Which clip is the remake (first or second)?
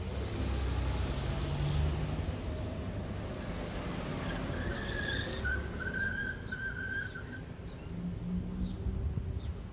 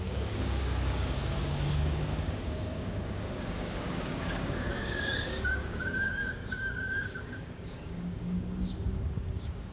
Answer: second